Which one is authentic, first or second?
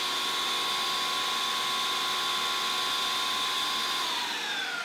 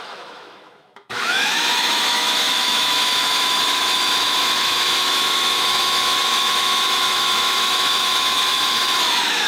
first